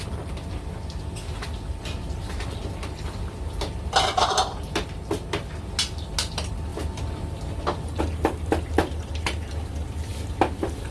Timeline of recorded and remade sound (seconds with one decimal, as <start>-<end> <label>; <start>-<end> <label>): 0.0-10.9 recorded